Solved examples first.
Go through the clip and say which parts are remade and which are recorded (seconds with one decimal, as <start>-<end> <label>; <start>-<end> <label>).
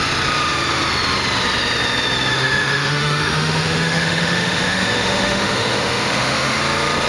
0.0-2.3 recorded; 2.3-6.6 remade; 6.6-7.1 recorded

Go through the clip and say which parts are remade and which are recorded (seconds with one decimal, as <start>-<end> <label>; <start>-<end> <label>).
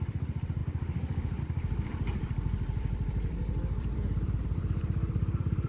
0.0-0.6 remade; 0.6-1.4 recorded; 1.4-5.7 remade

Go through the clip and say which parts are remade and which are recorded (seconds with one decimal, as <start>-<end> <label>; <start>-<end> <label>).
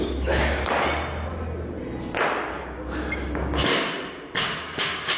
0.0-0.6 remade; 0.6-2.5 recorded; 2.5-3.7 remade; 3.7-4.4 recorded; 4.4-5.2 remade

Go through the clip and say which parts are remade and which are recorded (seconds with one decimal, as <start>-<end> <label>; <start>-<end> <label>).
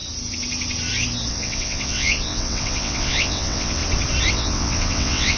0.0-1.3 recorded; 1.3-3.8 remade; 3.8-4.3 recorded; 4.3-5.4 remade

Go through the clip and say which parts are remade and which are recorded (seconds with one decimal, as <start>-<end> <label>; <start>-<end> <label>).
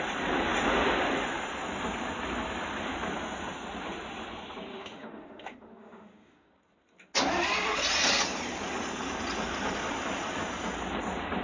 0.0-4.7 recorded; 4.7-6.5 remade; 6.5-11.4 recorded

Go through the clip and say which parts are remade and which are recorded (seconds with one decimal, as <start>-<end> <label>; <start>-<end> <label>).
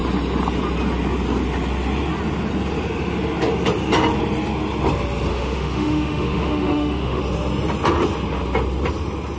0.0-5.3 recorded; 5.3-7.2 remade; 7.2-9.4 recorded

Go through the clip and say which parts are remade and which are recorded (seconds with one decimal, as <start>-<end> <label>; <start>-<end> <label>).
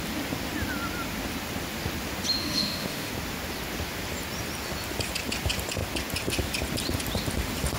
0.0-2.4 recorded; 2.4-3.1 remade; 3.1-7.8 recorded